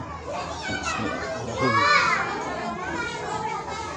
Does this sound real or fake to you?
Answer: real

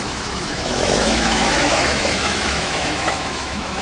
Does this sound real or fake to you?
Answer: fake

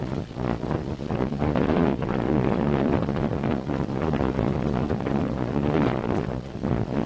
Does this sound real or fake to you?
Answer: fake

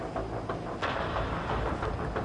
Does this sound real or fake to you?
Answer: real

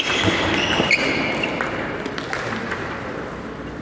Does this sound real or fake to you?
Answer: real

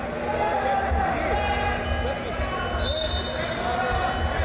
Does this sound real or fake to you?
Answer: real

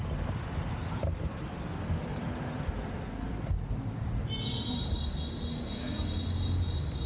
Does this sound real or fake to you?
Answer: real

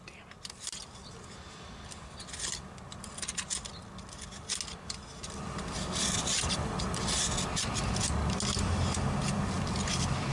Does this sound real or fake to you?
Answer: real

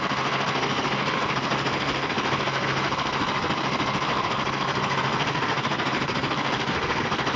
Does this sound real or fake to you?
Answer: fake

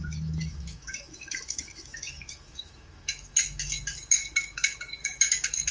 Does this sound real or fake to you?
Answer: fake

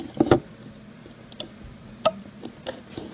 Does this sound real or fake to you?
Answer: real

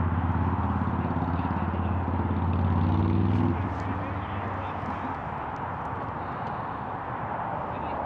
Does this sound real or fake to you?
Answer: real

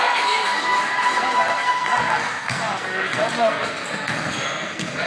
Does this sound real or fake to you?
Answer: fake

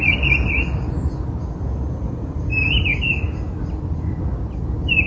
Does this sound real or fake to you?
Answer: real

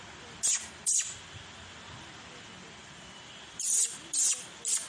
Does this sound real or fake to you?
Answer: real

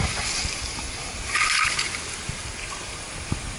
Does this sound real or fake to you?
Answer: real